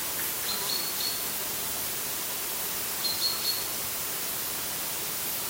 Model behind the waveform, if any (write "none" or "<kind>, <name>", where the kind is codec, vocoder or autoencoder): none